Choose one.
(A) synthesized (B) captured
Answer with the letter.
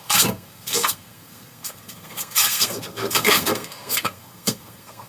A